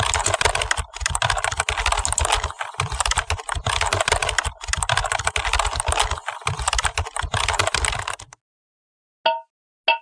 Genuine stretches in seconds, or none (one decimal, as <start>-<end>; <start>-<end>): 0.0-10.0